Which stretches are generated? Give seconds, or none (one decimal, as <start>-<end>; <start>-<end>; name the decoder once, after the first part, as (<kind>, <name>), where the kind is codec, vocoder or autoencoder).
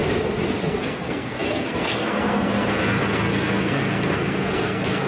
0.6-5.1 (codec, SNAC)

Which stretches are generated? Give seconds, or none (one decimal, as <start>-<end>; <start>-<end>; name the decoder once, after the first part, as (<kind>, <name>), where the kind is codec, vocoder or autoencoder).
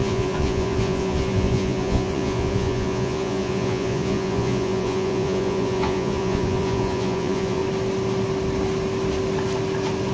0.0-7.6 (vocoder, Vocos)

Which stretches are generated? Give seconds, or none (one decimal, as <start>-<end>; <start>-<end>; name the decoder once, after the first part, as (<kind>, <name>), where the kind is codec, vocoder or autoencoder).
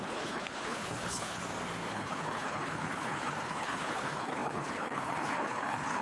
0.0-1.4 (codec, HILCodec); 1.9-6.0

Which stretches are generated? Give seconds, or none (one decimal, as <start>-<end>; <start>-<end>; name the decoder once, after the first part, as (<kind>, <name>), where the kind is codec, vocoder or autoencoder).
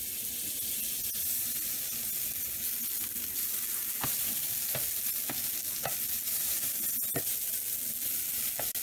none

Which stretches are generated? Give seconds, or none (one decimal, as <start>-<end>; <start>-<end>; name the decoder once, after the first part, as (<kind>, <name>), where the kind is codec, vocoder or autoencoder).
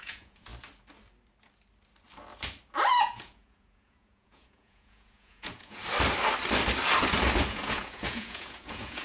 0.0-0.5 (vocoder, Vocos); 3.0-5.8; 7.5-9.0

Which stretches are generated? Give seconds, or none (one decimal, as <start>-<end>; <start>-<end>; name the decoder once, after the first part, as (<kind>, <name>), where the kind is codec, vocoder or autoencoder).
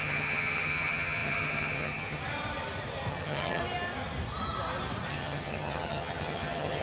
0.0-2.2 (vocoder, HiFi-GAN); 3.1-3.6; 5.1-6.8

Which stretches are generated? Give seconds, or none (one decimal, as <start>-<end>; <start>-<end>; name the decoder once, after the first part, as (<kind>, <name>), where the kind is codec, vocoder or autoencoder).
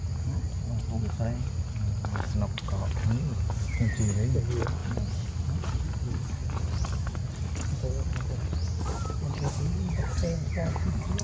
none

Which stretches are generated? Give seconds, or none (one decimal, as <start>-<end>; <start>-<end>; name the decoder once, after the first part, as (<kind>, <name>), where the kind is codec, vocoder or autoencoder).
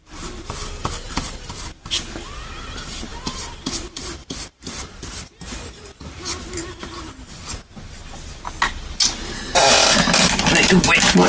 none